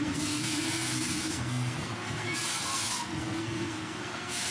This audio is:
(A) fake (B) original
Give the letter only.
A